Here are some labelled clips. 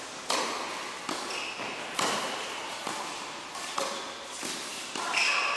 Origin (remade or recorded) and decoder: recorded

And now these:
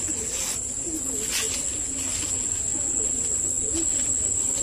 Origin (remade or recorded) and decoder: recorded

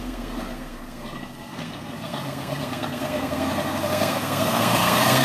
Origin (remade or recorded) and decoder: remade, codec, SNAC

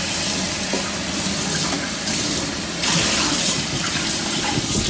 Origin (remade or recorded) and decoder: recorded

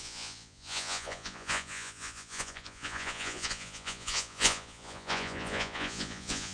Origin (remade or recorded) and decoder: remade, vocoder, Vocos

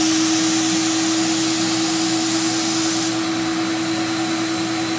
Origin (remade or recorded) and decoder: recorded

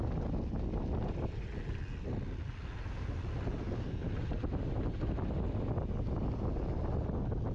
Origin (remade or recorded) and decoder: recorded